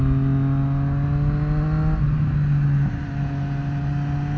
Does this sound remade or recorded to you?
recorded